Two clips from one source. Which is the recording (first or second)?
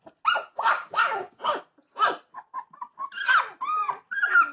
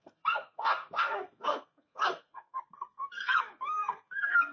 first